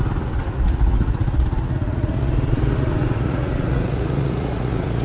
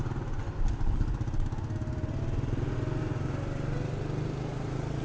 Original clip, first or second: second